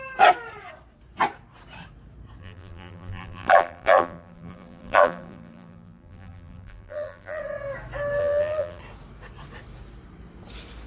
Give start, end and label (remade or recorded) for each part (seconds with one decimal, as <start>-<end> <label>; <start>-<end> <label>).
0.0-2.4 recorded; 2.4-7.4 remade; 7.4-8.2 recorded; 8.2-8.8 remade; 8.8-10.9 recorded